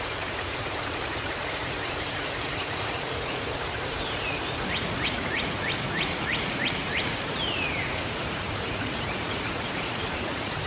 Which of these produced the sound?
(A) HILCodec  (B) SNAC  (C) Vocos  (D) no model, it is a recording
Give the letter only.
C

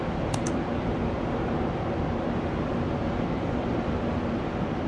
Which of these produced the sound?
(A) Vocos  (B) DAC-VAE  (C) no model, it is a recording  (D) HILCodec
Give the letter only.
C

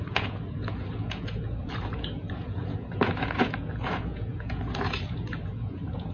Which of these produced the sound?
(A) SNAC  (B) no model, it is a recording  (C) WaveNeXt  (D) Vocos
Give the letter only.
D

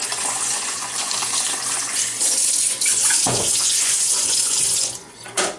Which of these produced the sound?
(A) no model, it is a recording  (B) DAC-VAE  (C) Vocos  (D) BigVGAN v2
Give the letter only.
C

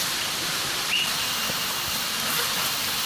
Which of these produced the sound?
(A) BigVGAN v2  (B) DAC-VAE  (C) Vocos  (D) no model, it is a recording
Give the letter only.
D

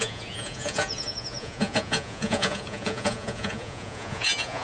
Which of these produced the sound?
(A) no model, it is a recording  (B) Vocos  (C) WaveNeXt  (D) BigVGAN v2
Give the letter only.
B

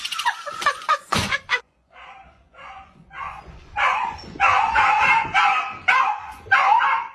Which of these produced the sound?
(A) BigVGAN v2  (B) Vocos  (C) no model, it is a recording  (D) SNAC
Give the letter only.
B